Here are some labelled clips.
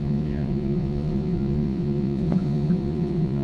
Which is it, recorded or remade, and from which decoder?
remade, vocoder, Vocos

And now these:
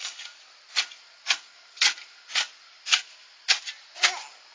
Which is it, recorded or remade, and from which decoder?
recorded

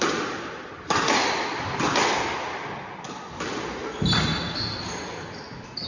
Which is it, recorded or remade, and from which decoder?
recorded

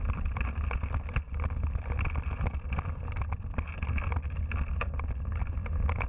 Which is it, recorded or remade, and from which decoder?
recorded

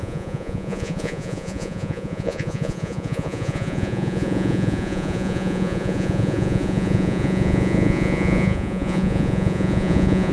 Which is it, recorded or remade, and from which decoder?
remade, vocoder, Vocos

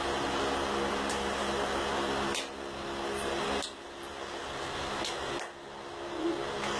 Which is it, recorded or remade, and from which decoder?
recorded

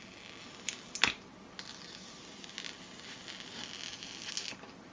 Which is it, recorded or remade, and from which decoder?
recorded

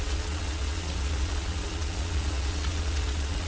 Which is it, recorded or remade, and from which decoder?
remade, vocoder, Vocos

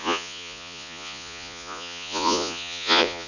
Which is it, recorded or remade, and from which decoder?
remade, vocoder, Vocos